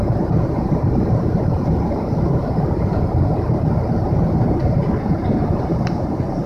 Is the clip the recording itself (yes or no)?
no